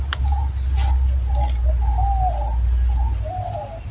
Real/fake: real